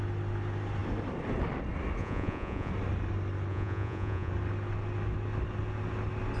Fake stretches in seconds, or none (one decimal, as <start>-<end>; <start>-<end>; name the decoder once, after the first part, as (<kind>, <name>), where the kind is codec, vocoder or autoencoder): 2.0-2.7 (vocoder, Vocos); 3.5-4.3